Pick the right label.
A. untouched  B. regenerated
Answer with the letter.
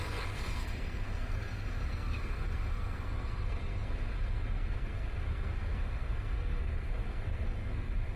B